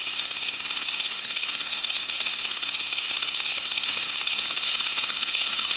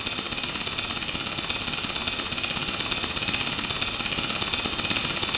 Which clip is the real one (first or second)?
second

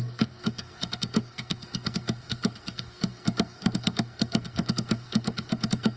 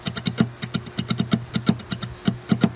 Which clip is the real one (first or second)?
second